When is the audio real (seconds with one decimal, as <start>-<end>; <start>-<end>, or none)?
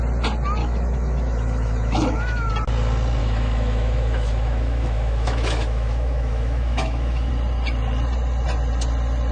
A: 0.0-0.6; 2.5-3.2; 7.3-9.3